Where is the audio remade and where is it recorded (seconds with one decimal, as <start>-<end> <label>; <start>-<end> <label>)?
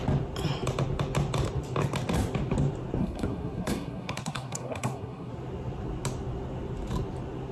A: 0.0-3.0 recorded; 3.0-5.3 remade; 5.3-7.5 recorded